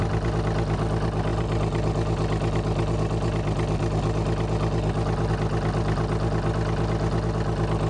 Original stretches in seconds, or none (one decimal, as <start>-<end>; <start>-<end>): 0.0-7.9